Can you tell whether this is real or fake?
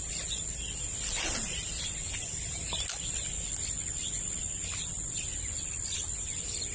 real